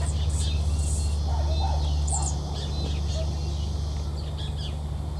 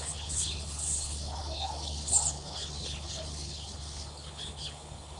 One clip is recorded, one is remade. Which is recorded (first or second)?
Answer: first